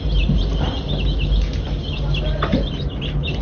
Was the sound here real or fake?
real